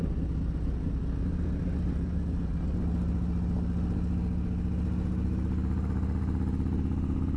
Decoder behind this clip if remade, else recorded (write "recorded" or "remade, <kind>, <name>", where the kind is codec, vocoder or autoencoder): recorded